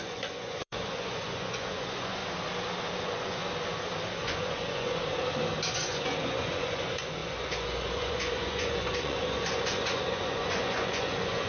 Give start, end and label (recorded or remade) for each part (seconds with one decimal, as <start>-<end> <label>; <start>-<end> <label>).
0.0-2.2 remade; 2.2-3.0 recorded; 3.0-3.4 remade; 3.4-4.2 recorded; 4.2-5.0 remade; 5.0-5.7 recorded; 5.7-11.5 remade